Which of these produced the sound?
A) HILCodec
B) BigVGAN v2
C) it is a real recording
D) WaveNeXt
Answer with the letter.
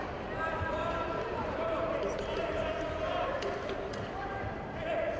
B